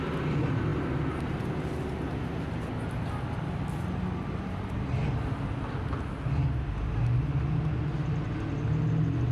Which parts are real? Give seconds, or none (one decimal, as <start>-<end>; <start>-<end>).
0.0-9.3